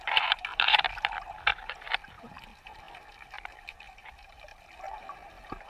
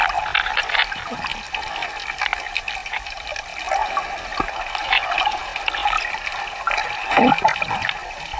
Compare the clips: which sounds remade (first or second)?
first